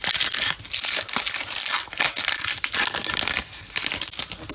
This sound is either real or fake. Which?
real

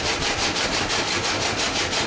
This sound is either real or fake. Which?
real